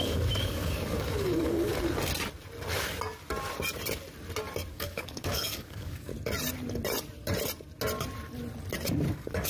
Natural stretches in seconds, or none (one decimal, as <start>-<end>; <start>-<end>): 1.7-4.7; 6.1-9.1